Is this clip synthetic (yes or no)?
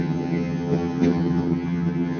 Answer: yes